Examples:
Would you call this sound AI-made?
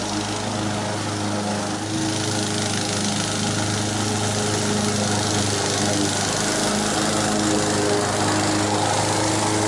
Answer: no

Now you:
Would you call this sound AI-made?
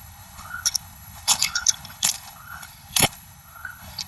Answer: yes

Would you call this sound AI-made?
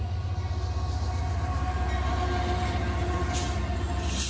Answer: no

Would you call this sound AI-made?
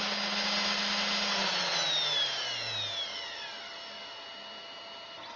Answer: no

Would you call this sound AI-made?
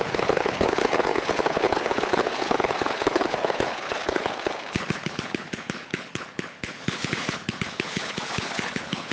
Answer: yes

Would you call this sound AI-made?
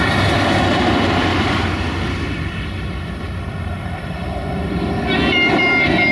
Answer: no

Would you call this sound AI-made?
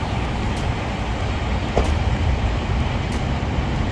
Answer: no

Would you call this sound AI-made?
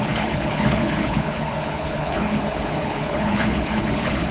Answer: yes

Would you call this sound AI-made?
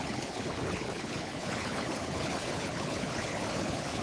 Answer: yes